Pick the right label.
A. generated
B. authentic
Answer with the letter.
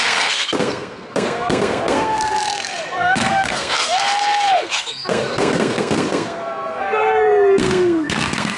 A